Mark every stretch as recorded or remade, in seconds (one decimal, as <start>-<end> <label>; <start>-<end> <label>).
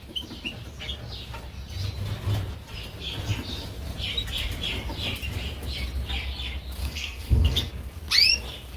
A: 0.0-6.8 recorded; 6.8-7.7 remade; 7.7-8.8 recorded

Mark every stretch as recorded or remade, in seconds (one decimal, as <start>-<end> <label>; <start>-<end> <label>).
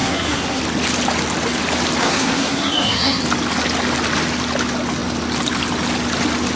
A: 0.0-0.6 remade; 0.6-2.0 recorded; 2.0-3.2 remade; 3.2-6.6 recorded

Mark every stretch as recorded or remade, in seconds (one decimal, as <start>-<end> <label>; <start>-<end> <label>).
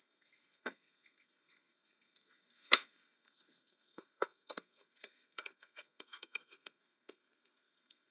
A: 0.0-8.1 remade